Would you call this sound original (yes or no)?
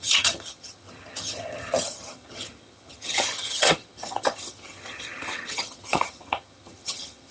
no